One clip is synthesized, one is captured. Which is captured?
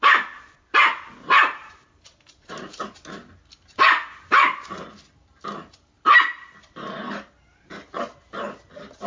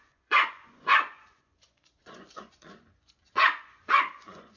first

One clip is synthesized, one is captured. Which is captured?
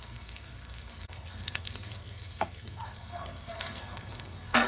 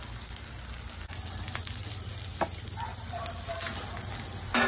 second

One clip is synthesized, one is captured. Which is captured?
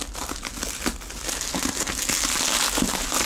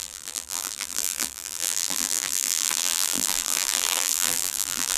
first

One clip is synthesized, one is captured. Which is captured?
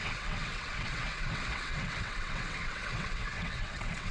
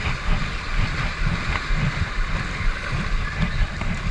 second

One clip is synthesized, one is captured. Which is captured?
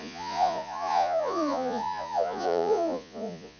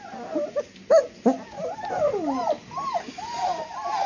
second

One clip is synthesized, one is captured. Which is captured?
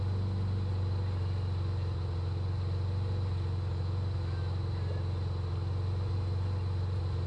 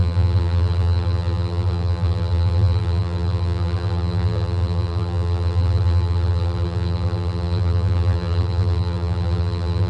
first